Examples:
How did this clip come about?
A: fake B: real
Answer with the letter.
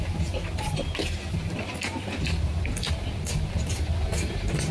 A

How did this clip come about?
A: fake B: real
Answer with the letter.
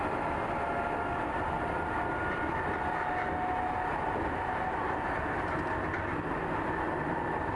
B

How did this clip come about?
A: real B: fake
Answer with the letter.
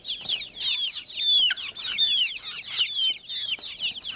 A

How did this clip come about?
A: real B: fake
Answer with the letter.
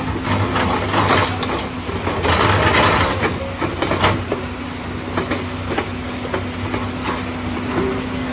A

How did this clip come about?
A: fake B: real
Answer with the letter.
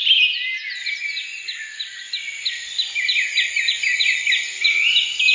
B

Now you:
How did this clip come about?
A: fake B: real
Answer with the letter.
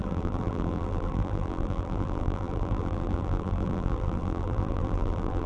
A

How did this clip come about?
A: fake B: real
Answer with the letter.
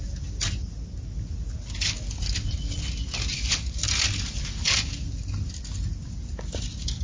B